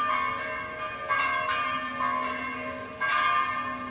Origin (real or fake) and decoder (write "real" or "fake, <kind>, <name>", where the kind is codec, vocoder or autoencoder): real